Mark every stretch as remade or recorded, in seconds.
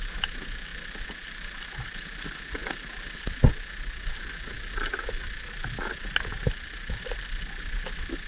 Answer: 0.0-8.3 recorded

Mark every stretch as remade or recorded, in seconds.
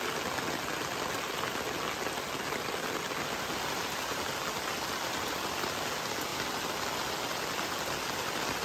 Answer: 0.0-8.6 recorded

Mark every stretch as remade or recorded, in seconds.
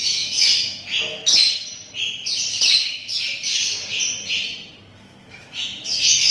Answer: 0.0-1.2 remade; 1.2-5.0 recorded; 5.0-6.3 remade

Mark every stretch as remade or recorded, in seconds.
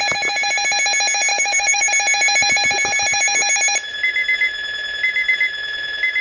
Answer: 0.0-1.3 recorded; 1.3-1.9 remade; 1.9-6.2 recorded